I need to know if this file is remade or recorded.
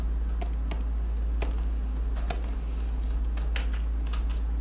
recorded